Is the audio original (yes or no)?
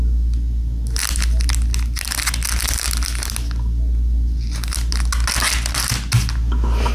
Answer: yes